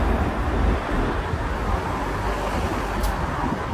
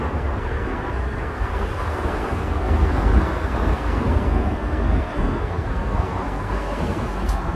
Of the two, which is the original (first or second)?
first